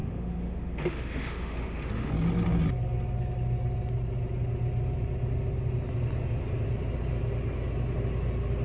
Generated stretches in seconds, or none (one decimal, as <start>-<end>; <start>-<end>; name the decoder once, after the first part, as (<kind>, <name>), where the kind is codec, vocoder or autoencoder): 0.0-2.1 (autoencoder, DAC-VAE)